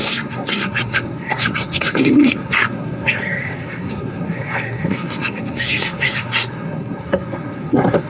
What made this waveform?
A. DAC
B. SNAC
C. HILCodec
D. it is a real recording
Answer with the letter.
B